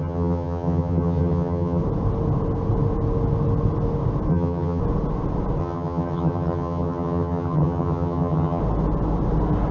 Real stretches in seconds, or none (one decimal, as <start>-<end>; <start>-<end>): 1.8-4.3; 4.8-5.6; 8.6-9.7